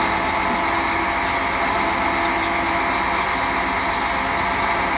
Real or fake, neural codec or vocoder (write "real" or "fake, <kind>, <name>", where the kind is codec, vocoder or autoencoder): real